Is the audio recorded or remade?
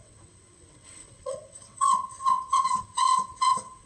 remade